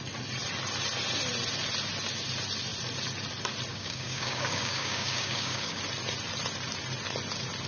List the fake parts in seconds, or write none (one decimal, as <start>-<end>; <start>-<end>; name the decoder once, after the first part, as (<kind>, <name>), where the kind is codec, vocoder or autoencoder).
3.7-5.8 (codec, DAC)